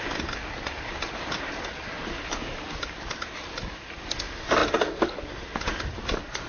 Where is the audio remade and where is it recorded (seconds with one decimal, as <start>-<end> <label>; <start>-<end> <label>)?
0.0-6.5 recorded